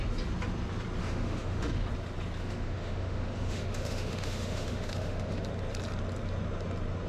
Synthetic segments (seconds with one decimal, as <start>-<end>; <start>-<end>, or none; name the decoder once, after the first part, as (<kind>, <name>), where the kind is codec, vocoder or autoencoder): 1.0-1.9 (autoencoder, DAC-VAE); 2.4-5.4